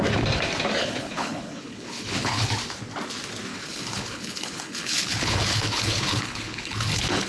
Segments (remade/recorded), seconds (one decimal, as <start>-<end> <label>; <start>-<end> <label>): 0.0-0.8 recorded; 0.8-2.5 remade; 2.5-3.5 recorded; 3.5-7.3 remade